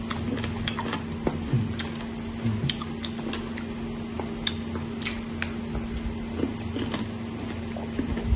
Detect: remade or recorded recorded